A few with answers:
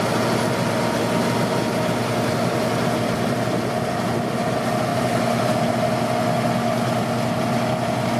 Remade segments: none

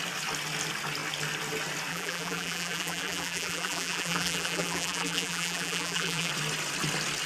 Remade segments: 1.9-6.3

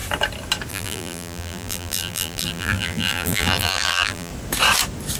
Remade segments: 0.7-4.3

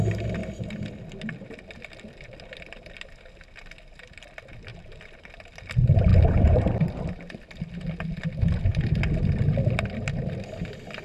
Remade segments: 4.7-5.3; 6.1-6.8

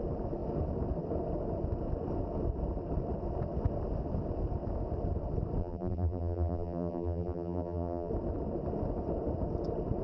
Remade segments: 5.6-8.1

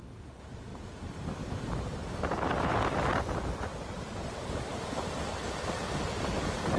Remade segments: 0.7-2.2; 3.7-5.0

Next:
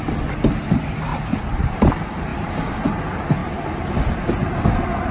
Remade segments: 1.1-1.9; 2.3-3.0; 3.4-4.5

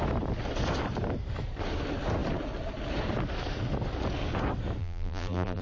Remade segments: 4.8-5.6